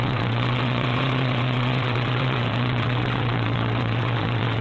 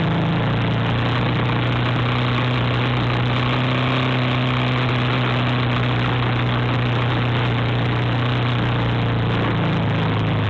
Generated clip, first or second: first